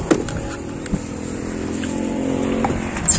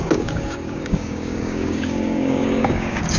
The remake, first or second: second